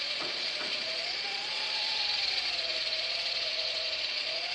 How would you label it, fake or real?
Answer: fake